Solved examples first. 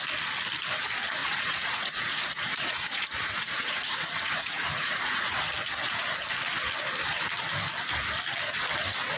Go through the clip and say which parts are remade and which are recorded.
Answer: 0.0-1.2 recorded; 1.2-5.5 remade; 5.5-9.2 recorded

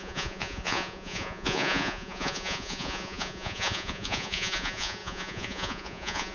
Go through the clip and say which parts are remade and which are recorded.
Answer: 0.0-6.3 remade

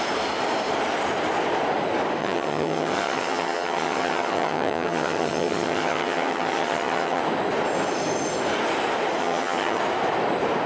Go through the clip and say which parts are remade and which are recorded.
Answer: 0.0-2.2 recorded; 2.2-7.2 remade; 7.2-9.2 recorded; 9.2-9.8 remade; 9.8-10.7 recorded

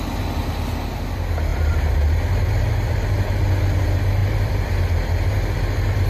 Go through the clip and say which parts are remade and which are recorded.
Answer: 0.0-1.5 recorded; 1.5-3.5 remade; 3.5-4.2 recorded; 4.2-4.7 remade; 4.7-6.1 recorded

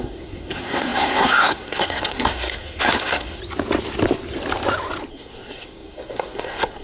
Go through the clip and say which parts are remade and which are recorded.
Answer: 0.0-3.4 remade; 3.4-5.1 recorded; 5.1-6.8 remade

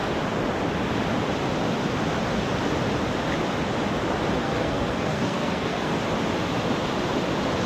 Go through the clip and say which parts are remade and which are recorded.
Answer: 0.0-4.4 recorded; 4.4-6.0 remade; 6.0-7.7 recorded